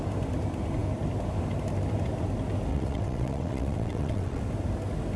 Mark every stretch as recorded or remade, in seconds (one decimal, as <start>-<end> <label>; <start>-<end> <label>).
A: 0.0-2.7 recorded; 2.7-4.4 remade; 4.4-5.2 recorded